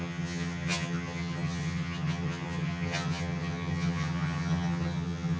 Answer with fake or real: fake